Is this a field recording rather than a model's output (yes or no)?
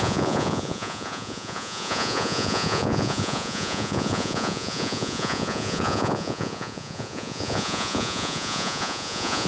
no